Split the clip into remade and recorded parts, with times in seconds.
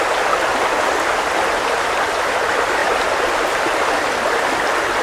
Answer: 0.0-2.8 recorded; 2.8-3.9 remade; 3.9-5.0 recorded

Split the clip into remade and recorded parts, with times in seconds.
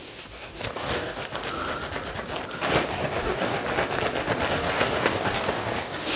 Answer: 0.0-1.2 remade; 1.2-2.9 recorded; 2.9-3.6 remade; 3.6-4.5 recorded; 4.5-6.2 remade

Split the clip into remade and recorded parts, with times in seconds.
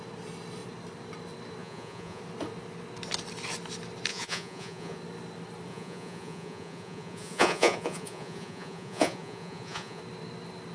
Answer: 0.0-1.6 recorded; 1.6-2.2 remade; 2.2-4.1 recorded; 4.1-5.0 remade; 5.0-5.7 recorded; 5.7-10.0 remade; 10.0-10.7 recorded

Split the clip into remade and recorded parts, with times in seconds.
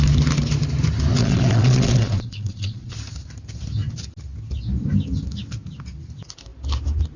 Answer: 0.0-1.2 recorded; 1.2-2.9 remade; 2.9-7.2 recorded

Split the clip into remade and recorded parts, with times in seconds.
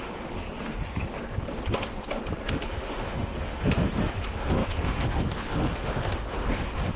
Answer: 0.0-0.4 remade; 0.4-2.5 recorded; 2.5-7.0 remade